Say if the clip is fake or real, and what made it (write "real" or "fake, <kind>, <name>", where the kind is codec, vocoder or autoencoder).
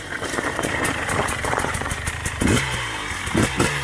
fake, vocoder, BigVGAN v2